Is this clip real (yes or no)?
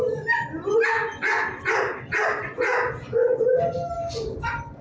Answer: yes